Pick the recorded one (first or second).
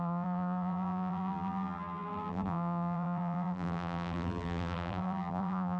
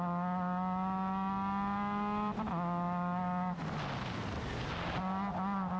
second